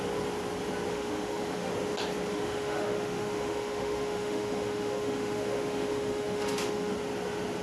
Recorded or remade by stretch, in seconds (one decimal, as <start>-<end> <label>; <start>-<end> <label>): 0.0-0.9 recorded; 0.9-1.7 remade; 1.7-2.3 recorded; 2.3-6.9 remade; 6.9-7.6 recorded